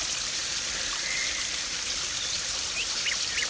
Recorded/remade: remade